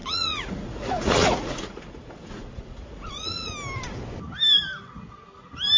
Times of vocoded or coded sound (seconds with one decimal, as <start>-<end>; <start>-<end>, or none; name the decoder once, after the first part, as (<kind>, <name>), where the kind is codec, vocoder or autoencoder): 0.0-3.5 (vocoder, Vocos)